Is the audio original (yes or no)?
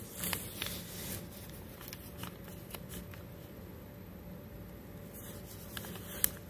yes